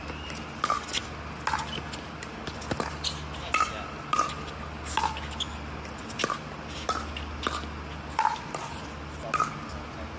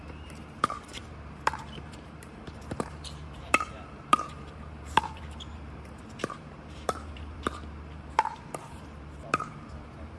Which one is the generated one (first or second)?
second